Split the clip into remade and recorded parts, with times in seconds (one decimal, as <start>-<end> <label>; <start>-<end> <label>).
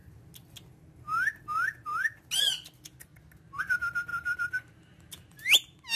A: 0.0-3.6 recorded; 3.6-6.0 remade